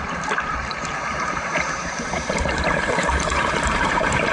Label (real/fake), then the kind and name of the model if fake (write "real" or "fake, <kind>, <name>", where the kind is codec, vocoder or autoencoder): fake, vocoder, BigVGAN v2